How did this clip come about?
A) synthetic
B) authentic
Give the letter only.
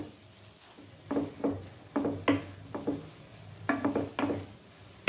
B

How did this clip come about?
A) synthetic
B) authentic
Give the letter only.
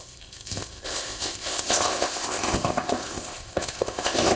A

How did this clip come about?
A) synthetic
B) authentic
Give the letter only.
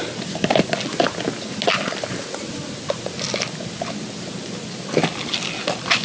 B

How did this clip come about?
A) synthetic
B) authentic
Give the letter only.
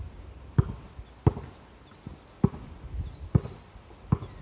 B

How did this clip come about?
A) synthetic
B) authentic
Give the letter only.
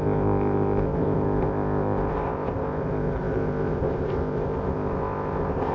A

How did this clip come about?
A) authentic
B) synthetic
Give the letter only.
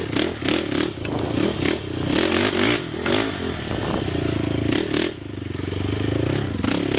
A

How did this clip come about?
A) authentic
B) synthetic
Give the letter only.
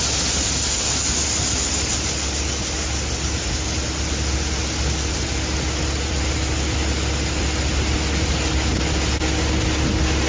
A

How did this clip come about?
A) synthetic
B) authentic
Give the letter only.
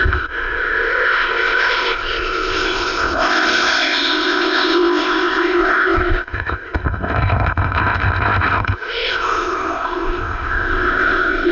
A